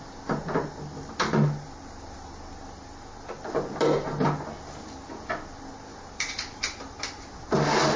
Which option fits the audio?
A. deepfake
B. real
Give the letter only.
B